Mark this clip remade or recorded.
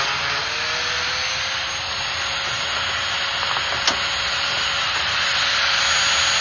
recorded